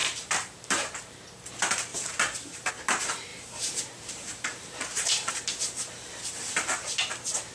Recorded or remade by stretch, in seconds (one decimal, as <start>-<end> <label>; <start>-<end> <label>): 0.0-1.4 remade; 1.4-1.9 recorded; 1.9-2.7 remade; 2.7-3.3 recorded; 3.3-5.3 remade; 5.3-7.5 recorded